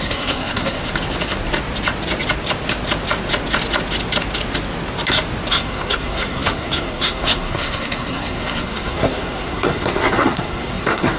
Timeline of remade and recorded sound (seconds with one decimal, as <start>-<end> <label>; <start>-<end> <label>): 0.0-0.8 remade; 0.8-5.5 recorded; 5.5-11.2 remade